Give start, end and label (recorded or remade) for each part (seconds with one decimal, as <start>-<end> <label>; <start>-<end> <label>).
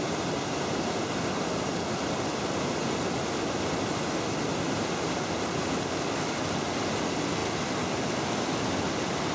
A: 0.0-9.3 recorded